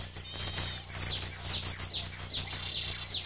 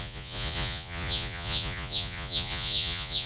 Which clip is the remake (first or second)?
second